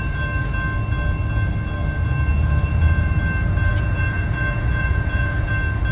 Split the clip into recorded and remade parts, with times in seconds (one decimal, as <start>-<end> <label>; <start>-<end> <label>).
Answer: 0.0-2.3 recorded; 2.3-3.1 remade; 3.1-3.7 recorded; 3.7-5.5 remade; 5.5-5.9 recorded